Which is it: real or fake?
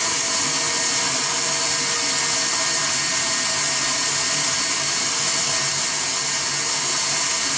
real